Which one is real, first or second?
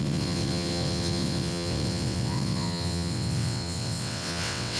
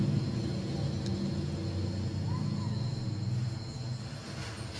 second